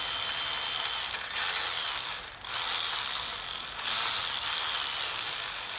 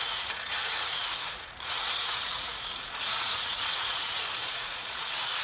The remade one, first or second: second